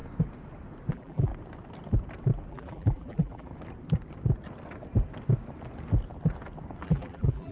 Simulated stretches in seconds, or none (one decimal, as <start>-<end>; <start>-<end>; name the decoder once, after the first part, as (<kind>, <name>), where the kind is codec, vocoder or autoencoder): 0.9-1.3 (vocoder, BigVGAN v2); 2.5-3.5; 6.8-7.5